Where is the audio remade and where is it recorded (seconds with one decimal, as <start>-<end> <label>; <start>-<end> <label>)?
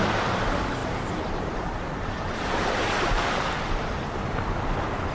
0.0-0.8 recorded; 0.8-3.9 remade; 3.9-5.1 recorded